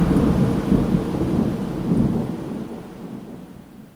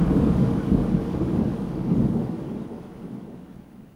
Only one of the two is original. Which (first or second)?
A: first